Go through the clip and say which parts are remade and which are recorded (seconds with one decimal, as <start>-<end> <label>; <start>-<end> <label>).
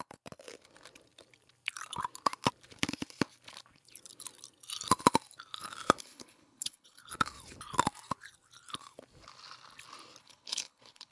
0.0-6.0 recorded; 6.0-7.1 remade; 7.1-10.2 recorded; 10.2-11.1 remade